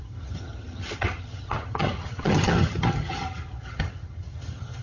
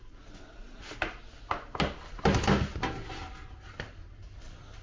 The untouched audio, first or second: second